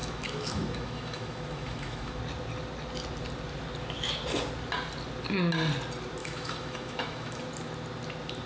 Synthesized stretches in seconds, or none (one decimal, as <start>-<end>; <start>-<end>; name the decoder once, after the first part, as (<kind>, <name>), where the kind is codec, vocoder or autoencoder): 0.0-2.2 (autoencoder, DAC-VAE); 6.2-7.4